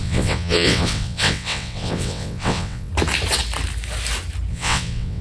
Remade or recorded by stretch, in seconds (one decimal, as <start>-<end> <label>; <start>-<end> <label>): 0.0-2.9 remade; 2.9-4.5 recorded; 4.5-5.2 remade